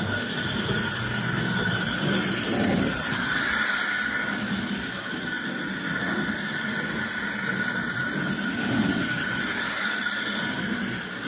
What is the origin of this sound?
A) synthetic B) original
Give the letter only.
B